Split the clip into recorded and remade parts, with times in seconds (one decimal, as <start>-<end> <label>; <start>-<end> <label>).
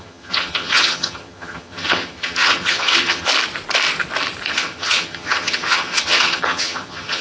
0.0-3.3 remade; 3.3-4.5 recorded; 4.5-7.2 remade